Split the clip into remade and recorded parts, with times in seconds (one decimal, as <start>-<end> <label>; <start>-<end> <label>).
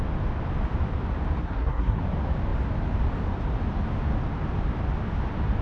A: 0.0-1.4 recorded; 1.4-2.0 remade; 2.0-5.6 recorded